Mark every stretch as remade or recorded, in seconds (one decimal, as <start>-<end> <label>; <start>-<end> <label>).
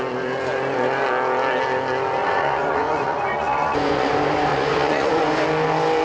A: 0.0-2.2 recorded; 2.2-4.1 remade; 4.1-4.5 recorded; 4.5-5.2 remade; 5.2-6.0 recorded